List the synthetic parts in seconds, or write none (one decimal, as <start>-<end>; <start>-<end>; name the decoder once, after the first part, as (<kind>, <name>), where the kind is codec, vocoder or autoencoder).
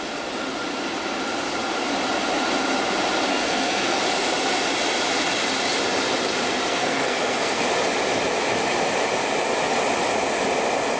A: 3.3-4.0 (codec, SNAC); 6.7-7.6